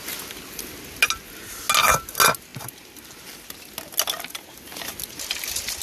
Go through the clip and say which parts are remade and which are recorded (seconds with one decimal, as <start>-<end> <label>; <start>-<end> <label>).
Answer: 0.0-5.8 recorded

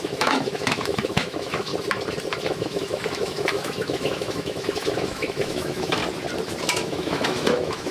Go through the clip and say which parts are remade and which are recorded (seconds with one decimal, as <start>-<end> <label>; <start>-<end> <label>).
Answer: 0.0-1.7 remade; 1.7-2.3 recorded; 2.3-6.0 remade; 6.0-6.6 recorded; 6.6-7.9 remade